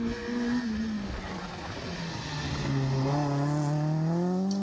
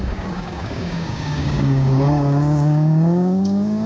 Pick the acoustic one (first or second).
first